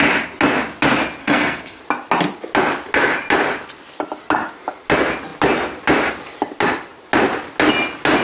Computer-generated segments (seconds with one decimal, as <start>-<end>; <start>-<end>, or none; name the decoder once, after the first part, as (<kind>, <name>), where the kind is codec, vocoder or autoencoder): 1.2-1.8 (codec, SNAC)